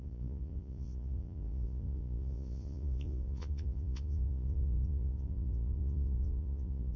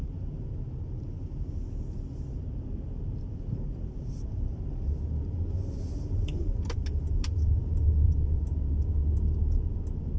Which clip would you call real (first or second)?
second